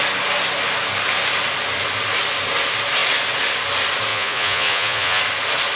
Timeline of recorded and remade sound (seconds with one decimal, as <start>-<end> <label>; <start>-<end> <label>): 0.0-4.1 recorded; 4.1-5.2 remade; 5.2-5.8 recorded